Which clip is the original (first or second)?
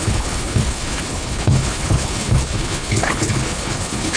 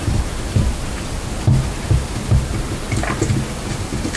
second